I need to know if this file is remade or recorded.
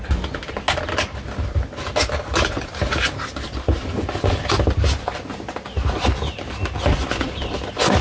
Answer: recorded